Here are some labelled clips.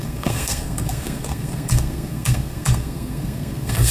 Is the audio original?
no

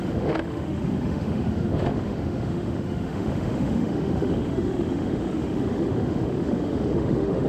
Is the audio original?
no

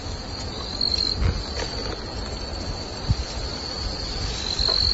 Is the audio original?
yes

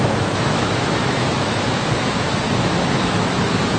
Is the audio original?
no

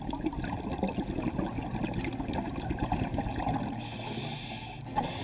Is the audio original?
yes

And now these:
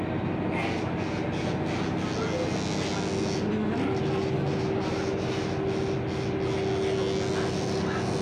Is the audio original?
yes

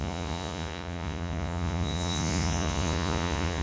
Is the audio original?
no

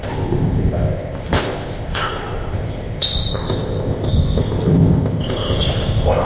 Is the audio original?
no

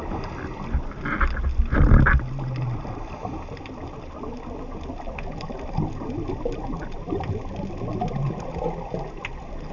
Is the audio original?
yes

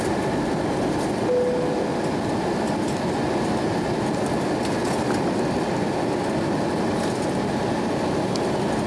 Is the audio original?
yes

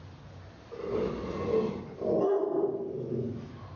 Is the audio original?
yes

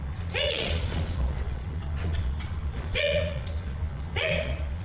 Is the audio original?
no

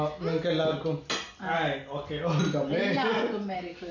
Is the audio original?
yes